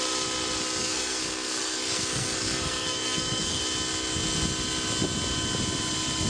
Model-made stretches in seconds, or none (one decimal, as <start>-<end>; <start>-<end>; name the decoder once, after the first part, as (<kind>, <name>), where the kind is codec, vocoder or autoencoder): 0.8-3.6 (codec, SNAC)